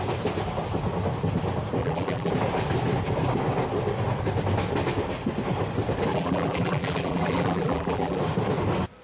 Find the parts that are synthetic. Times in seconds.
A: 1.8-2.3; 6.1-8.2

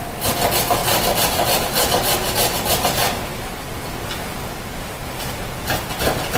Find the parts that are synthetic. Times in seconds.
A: 0.8-1.7

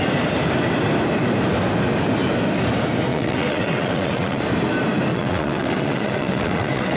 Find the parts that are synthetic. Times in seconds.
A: 3.1-4.4; 5.1-7.0

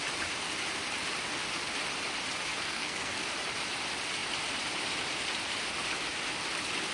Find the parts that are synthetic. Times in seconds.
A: 2.5-3.2

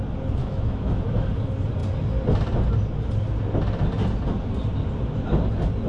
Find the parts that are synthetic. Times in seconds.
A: 0.4-1.3